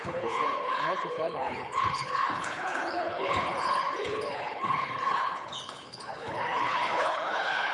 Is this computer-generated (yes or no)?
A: yes